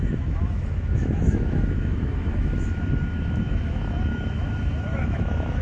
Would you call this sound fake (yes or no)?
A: yes